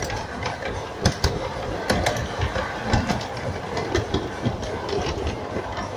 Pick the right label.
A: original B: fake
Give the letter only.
A